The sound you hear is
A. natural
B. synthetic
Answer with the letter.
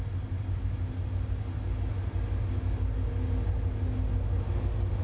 A